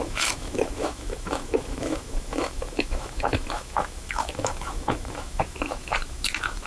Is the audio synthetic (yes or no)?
yes